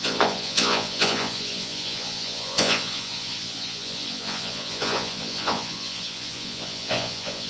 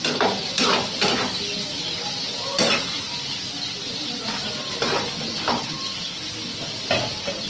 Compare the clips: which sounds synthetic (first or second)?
first